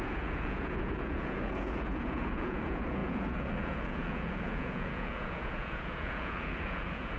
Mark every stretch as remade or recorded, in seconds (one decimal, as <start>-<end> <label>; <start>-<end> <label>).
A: 0.0-7.2 remade